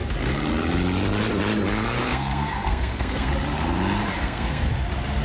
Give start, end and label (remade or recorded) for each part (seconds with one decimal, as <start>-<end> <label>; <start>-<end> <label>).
0.0-2.1 recorded; 2.1-3.3 remade; 3.3-4.2 recorded; 4.2-4.7 remade; 4.7-5.2 recorded